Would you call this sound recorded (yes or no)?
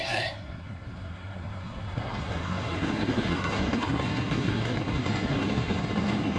no